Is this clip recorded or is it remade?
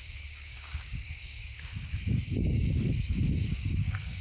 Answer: remade